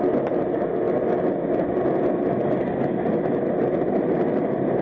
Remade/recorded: recorded